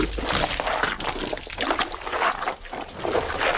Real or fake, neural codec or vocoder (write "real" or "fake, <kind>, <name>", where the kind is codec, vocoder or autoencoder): real